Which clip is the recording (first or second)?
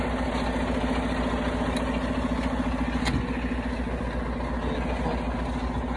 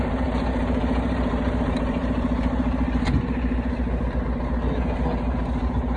first